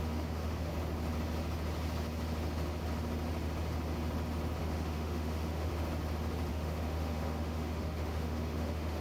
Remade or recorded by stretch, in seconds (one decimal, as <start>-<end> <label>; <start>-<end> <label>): 0.0-0.7 remade; 0.7-4.6 recorded; 4.6-5.7 remade; 5.7-6.5 recorded; 6.5-9.0 remade